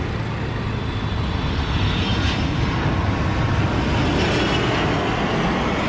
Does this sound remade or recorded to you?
recorded